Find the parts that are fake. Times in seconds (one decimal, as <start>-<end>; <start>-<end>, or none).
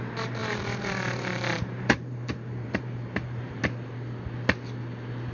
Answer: 0.4-3.6